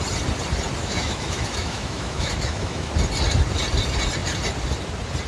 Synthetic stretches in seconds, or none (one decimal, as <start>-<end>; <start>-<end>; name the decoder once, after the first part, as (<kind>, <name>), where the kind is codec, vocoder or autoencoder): 0.8-2.9 (autoencoder, DAC-VAE)